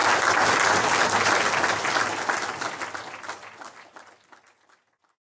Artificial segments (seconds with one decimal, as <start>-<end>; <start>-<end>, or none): none